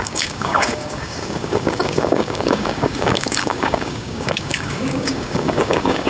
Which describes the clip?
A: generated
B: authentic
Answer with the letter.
A